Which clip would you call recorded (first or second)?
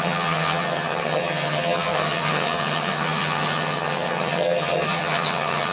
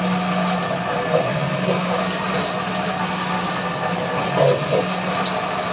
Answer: second